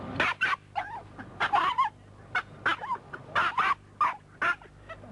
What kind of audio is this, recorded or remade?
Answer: recorded